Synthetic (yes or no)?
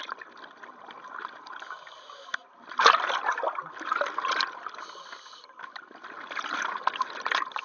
no